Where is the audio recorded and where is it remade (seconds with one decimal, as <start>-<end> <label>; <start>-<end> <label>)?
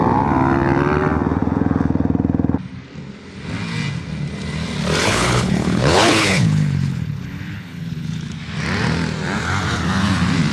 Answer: 0.0-5.0 recorded; 5.0-8.2 remade; 8.2-10.5 recorded